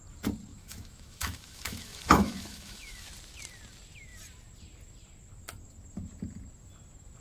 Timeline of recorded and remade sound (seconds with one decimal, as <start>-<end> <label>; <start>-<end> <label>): 0.0-0.5 recorded; 0.5-3.1 remade; 3.1-7.2 recorded